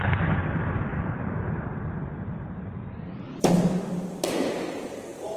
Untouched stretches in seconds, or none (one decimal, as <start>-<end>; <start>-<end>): 0.0-0.9; 4.1-5.4